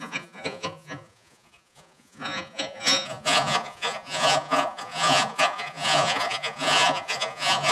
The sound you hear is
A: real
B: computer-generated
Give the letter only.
B